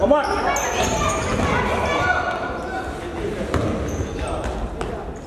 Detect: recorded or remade recorded